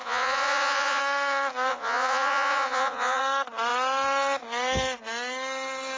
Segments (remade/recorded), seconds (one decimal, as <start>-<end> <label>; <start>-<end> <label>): 0.0-1.0 remade; 1.0-1.7 recorded; 1.7-3.2 remade; 3.2-6.0 recorded